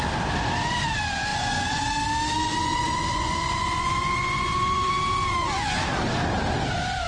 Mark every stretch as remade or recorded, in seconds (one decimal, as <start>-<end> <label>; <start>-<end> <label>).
0.0-1.3 recorded; 1.3-1.9 remade; 1.9-2.5 recorded; 2.5-4.9 remade; 4.9-7.1 recorded